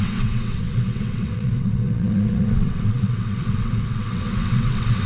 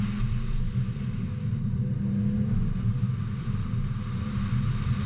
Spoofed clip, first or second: first